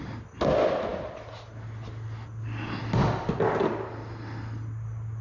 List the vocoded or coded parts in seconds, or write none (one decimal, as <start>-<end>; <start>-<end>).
none